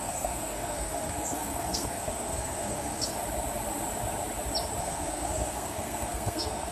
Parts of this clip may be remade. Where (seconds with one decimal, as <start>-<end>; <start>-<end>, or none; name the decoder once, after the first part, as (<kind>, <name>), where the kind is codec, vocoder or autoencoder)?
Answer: 0.0-3.1 (codec, SNAC); 4.8-6.7